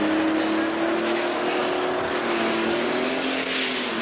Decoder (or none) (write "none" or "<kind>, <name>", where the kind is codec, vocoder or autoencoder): none